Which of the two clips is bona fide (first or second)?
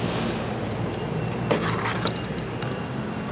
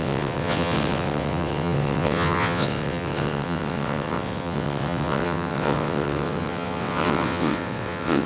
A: first